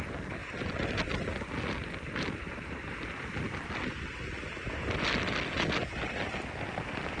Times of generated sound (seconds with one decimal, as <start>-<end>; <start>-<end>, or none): none